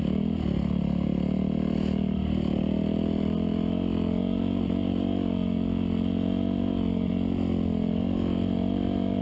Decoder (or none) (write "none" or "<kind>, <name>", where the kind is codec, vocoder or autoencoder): none